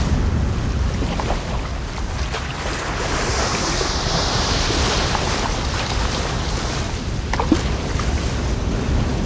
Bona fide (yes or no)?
yes